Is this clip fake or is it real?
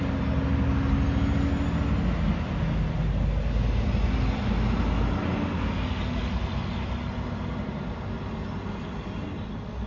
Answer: real